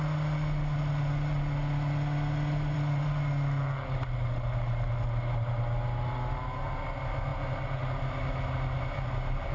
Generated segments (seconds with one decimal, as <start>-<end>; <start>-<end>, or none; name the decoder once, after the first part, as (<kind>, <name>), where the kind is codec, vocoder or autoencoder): none